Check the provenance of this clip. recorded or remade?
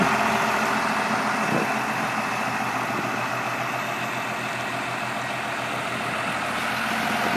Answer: recorded